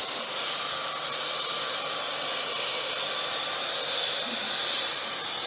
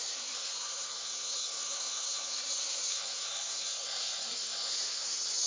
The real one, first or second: first